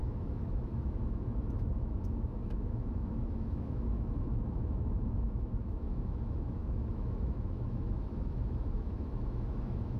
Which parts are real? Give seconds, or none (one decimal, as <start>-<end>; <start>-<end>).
none